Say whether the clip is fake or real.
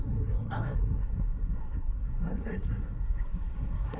fake